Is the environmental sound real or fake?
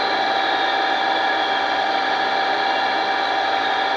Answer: real